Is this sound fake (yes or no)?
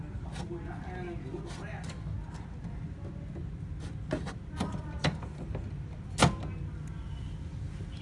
no